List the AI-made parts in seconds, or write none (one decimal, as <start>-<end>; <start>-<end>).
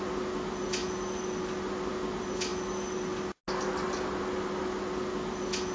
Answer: none